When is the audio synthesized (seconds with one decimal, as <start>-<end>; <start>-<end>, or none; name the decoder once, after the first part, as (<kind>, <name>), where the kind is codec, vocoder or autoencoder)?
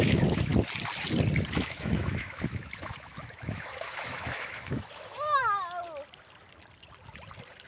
0.0-0.5 (autoencoder, DAC-VAE); 1.5-5.4